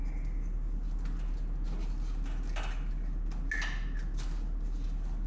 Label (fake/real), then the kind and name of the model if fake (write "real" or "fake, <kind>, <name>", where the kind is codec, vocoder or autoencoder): real